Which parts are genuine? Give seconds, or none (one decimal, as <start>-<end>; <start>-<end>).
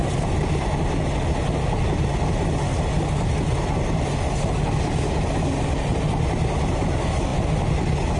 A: 0.0-8.2